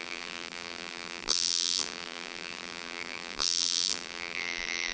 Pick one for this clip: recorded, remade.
remade